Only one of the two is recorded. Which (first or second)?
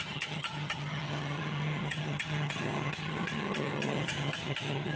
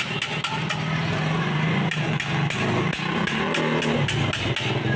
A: second